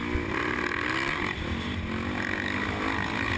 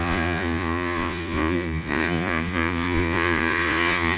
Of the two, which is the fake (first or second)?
second